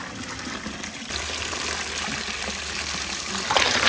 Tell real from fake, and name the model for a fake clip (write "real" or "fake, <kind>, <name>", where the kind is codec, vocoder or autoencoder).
real